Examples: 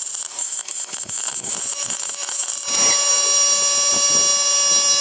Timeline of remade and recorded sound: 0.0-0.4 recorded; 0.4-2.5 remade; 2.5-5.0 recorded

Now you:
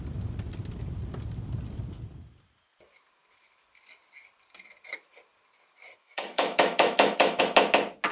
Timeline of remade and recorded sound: 0.0-6.0 recorded; 6.0-7.4 remade; 7.4-8.1 recorded